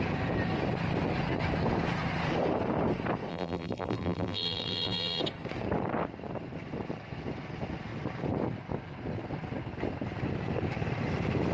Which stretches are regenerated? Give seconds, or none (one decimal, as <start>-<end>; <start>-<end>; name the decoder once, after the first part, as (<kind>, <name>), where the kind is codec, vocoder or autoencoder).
3.3-5.2 (vocoder, BigVGAN v2)